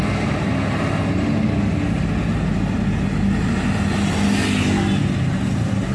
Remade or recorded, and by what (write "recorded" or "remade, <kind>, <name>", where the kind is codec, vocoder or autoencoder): recorded